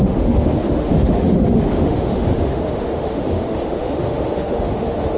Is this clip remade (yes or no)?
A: yes